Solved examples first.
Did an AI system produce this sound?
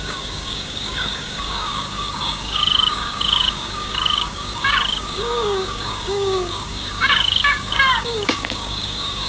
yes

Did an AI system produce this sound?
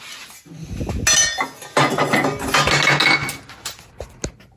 no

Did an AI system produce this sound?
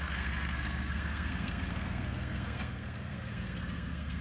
yes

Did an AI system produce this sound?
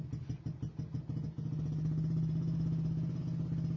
no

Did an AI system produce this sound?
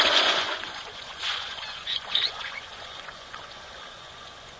yes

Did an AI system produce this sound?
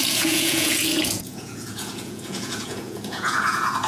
yes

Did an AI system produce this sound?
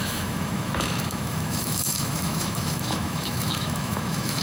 yes